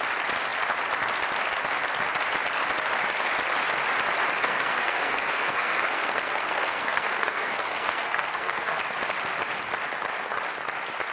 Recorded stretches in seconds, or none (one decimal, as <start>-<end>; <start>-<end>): 0.0-4.4; 8.8-11.1

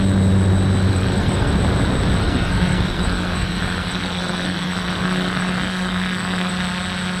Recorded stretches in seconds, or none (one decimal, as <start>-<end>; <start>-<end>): 0.0-0.9; 1.5-2.2; 6.5-7.2

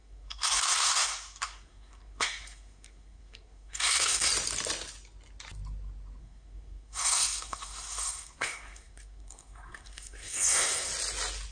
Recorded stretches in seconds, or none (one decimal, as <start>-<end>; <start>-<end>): 4.3-6.2; 10.9-11.5

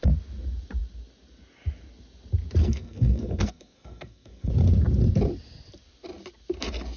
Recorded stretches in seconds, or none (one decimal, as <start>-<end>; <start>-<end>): 0.0-2.6; 4.5-7.0

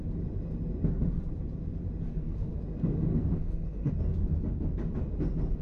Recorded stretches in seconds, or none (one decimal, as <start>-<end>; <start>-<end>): 0.0-2.1; 2.6-3.1; 3.9-5.6

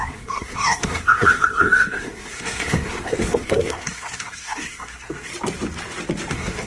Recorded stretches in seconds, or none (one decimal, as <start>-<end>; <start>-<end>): 5.3-6.3

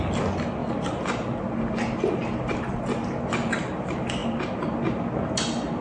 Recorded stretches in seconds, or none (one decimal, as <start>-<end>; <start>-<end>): 0.0-5.8